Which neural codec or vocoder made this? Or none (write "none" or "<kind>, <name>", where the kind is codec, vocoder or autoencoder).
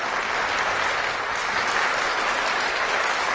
none